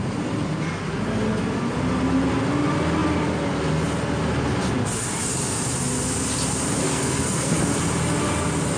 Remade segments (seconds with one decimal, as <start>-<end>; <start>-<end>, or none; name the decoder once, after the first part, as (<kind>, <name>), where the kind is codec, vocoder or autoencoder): 6.8-7.6 (codec, SNAC)